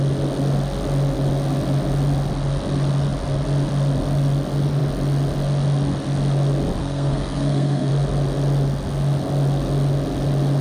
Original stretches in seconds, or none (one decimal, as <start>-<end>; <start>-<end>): 0.0-6.8; 7.9-10.6